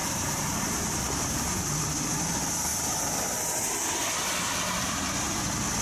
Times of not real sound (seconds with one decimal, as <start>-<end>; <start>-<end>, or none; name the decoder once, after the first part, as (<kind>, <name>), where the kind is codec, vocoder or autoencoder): 0.0-1.9 (vocoder, BigVGAN v2)

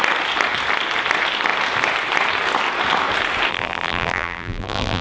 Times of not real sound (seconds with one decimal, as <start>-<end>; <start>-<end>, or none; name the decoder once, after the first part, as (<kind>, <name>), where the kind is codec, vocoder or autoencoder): 3.5-5.0 (vocoder, BigVGAN v2)